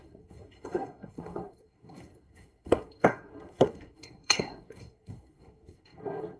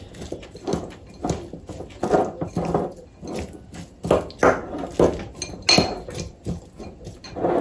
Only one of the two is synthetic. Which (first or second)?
first